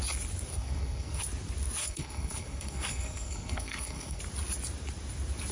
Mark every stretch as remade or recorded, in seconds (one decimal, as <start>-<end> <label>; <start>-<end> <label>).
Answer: 0.0-0.5 recorded; 0.5-1.2 remade; 1.2-1.8 recorded; 1.8-4.2 remade; 4.2-5.5 recorded